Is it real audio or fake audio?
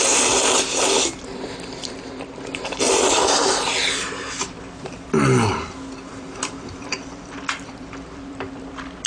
fake